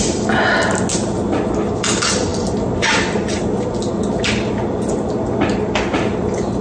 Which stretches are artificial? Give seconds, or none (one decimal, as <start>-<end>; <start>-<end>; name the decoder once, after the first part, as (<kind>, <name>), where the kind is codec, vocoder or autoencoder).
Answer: none